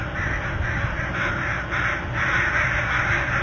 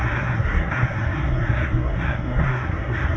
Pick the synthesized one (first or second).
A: second